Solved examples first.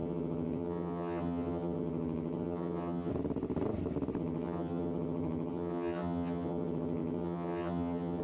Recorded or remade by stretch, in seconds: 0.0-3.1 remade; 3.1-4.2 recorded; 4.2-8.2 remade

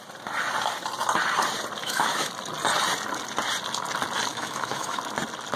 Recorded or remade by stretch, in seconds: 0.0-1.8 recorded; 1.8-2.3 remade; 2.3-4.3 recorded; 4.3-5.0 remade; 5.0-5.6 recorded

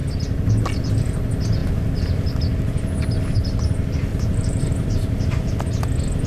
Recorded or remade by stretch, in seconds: 0.0-4.1 recorded; 4.1-5.6 remade; 5.6-6.3 recorded